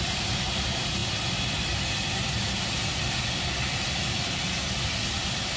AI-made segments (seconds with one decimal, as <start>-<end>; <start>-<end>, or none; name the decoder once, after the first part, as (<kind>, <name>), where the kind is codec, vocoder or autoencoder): none